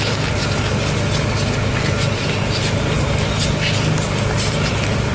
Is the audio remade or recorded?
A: recorded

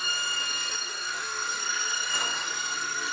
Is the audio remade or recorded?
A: remade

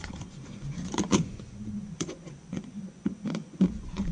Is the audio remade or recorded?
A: remade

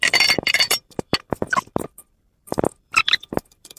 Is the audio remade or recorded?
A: remade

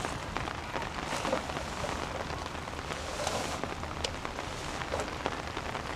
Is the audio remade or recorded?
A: recorded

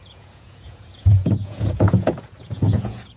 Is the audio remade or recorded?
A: remade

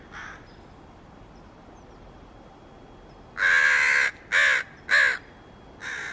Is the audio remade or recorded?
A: recorded